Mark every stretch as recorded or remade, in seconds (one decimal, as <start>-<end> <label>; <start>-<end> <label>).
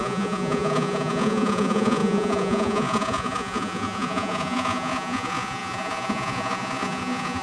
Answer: 0.0-7.4 remade